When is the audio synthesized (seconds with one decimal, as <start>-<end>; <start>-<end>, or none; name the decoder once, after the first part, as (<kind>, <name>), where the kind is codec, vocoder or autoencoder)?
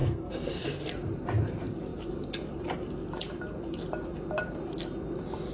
0.0-0.9 (codec, SNAC)